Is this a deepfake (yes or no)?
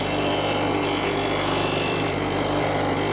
yes